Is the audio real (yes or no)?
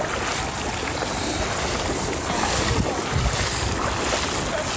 yes